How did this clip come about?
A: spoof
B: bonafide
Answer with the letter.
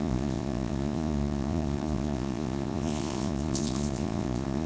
A